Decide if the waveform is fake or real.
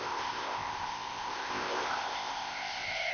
fake